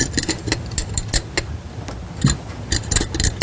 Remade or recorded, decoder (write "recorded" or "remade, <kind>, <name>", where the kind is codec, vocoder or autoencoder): recorded